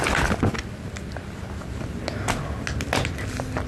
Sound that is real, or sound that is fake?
real